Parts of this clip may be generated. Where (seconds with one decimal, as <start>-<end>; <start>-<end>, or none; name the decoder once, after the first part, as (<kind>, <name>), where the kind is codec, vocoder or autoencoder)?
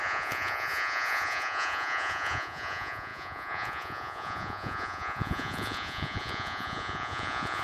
0.0-7.6 (vocoder, Vocos)